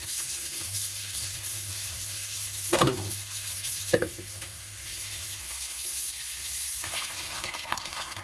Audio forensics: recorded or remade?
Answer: remade